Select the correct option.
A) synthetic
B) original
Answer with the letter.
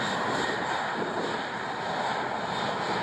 B